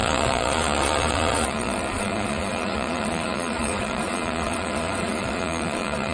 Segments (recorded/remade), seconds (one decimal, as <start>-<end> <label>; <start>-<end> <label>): 0.0-6.1 remade